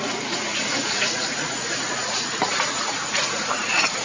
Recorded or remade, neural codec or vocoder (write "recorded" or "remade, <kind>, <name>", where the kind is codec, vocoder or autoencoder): remade, vocoder, Vocos